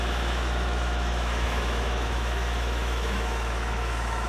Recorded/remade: remade